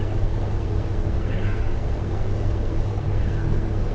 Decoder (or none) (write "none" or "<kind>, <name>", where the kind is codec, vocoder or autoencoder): codec, SNAC